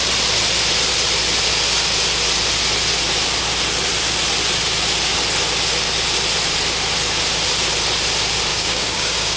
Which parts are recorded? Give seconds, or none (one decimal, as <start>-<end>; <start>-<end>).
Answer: 0.0-8.5